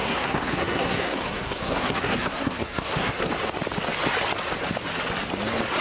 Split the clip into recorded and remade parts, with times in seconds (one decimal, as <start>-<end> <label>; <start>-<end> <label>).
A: 0.0-3.3 remade; 3.3-5.8 recorded